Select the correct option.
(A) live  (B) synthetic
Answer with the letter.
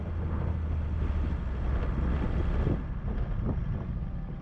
A